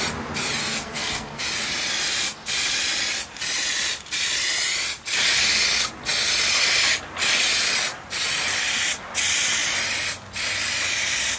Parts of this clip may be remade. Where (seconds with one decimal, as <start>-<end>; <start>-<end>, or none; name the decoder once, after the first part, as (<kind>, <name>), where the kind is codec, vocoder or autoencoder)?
0.6-1.4 (codec, SNAC)